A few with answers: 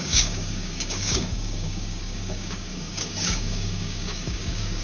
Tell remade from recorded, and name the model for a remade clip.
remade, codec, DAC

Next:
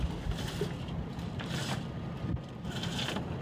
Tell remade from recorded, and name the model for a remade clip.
recorded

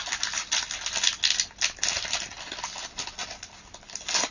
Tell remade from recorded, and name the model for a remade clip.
recorded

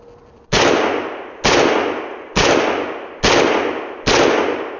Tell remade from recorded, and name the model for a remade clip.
recorded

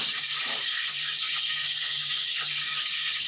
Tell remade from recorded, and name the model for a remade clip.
remade, codec, DAC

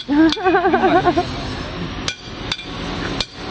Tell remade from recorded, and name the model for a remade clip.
recorded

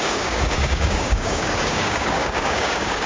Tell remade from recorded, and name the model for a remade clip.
remade, codec, DAC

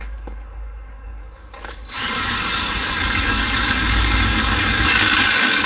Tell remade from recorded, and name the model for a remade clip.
remade, codec, DAC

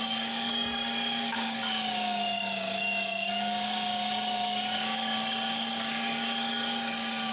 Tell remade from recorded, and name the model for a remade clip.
remade, codec, DAC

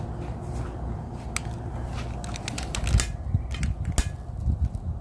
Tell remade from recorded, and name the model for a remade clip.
recorded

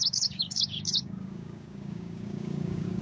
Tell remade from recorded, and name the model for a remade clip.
remade, codec, DAC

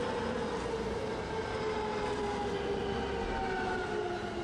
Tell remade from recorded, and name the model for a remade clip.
recorded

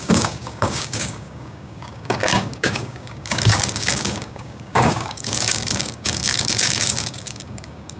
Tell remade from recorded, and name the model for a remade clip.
remade, codec, DAC